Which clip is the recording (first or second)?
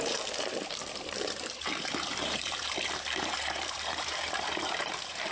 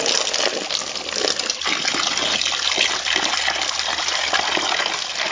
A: second